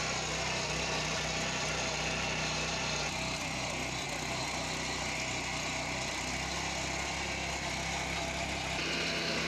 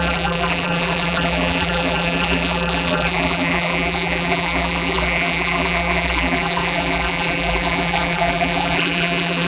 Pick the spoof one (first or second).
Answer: second